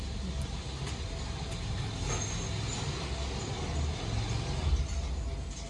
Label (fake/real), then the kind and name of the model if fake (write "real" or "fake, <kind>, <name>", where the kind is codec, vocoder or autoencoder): real